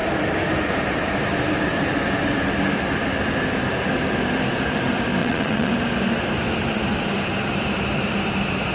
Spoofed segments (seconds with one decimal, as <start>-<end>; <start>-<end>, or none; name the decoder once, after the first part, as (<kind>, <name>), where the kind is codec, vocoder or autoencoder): 5.2-5.7 (vocoder, WaveNeXt)

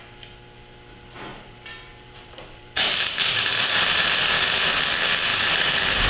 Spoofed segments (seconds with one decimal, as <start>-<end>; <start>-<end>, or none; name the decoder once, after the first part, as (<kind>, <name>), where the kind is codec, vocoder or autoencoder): 1.3-4.8 (vocoder, BigVGAN v2); 5.3-6.1

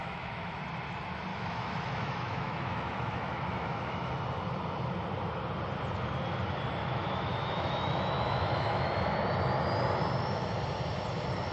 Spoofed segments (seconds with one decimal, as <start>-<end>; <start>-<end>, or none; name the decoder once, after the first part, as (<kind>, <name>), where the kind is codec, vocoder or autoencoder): 0.0-0.6 (autoencoder, DAC-VAE); 1.3-4.1; 6.8-9.1

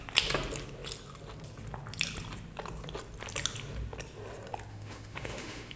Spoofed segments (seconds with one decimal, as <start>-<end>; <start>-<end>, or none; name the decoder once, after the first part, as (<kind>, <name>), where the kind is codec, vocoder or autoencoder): 4.7-5.8 (autoencoder, DAC-VAE)

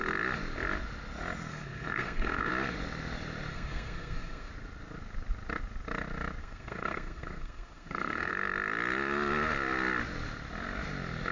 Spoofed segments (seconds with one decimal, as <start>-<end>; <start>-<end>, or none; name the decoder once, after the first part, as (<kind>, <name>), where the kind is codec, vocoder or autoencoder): 1.5-2.5 (codec, SNAC); 3.5-4.5; 6.4-8.3

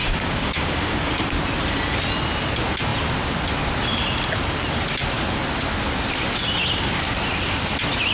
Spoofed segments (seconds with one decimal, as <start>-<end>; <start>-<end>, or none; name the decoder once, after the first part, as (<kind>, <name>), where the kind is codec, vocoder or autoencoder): 0.0-1.1 (codec, DAC)

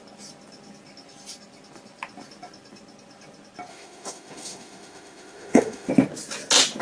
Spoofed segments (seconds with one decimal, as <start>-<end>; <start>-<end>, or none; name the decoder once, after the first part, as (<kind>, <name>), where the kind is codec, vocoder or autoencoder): 3.7-5.9 (autoencoder, DAC-VAE)